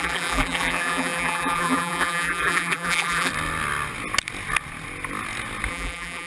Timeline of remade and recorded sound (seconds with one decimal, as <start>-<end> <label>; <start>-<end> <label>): 0.0-3.3 remade; 3.3-5.7 recorded; 5.7-6.3 remade